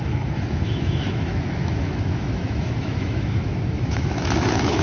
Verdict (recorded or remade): remade